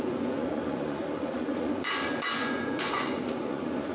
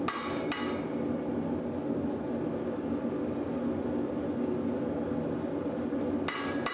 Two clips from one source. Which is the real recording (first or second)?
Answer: second